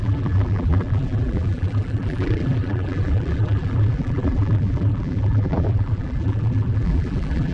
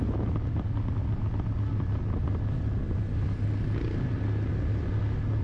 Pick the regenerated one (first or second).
first